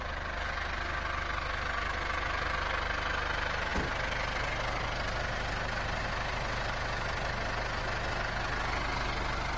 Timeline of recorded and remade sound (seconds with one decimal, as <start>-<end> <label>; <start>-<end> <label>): 0.0-9.6 recorded